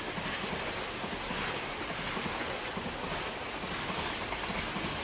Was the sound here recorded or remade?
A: recorded